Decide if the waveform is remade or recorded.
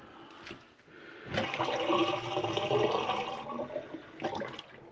recorded